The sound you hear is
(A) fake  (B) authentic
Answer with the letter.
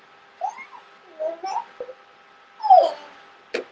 B